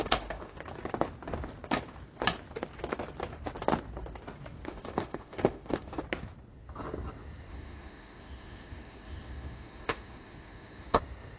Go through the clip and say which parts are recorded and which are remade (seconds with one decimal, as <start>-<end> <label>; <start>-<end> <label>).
0.0-0.6 remade; 0.6-4.7 recorded; 4.7-5.9 remade; 5.9-7.5 recorded; 7.5-11.0 remade; 11.0-11.4 recorded

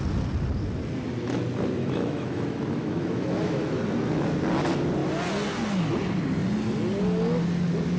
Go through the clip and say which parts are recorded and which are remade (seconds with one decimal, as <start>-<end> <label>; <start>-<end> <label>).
0.0-1.8 recorded; 1.8-3.8 remade; 3.8-8.0 recorded